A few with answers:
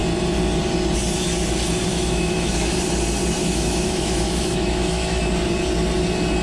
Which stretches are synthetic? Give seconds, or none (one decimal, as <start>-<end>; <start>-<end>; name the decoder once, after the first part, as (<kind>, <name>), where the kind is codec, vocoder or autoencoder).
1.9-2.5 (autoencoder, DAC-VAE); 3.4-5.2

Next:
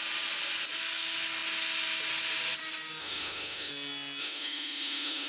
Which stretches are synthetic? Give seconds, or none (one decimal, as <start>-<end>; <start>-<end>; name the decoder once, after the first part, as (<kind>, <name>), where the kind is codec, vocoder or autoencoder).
3.0-3.7 (autoencoder, DAC-VAE); 4.2-5.3

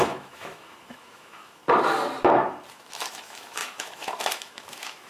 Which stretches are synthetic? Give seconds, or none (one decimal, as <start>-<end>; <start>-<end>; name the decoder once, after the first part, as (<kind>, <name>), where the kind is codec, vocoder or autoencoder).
0.0-1.6 (autoencoder, DAC-VAE); 2.7-5.1

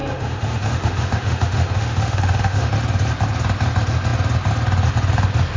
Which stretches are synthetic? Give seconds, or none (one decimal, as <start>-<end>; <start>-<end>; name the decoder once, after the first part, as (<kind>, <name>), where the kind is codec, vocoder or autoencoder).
0.0-2.7 (autoencoder, DAC-VAE)

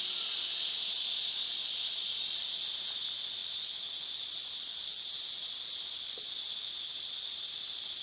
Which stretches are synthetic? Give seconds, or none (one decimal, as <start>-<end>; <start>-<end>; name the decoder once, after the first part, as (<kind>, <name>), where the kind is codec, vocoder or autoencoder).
none

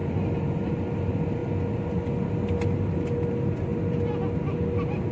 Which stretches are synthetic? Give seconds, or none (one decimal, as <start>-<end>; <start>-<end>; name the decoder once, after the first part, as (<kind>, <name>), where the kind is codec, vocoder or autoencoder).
none